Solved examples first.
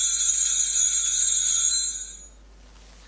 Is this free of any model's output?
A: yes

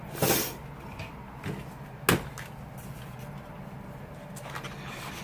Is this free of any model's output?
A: yes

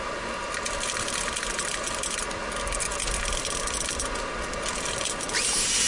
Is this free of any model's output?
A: yes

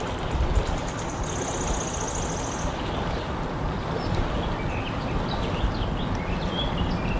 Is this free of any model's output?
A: yes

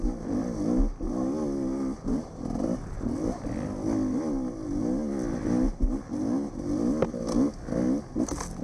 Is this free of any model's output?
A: yes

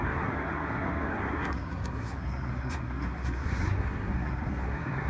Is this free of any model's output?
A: no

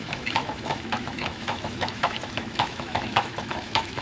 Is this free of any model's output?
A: no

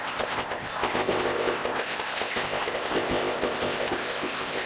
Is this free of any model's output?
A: no